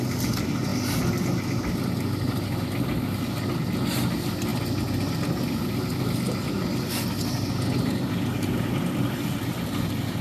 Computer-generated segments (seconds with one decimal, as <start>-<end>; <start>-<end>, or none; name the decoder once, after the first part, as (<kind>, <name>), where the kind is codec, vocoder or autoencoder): none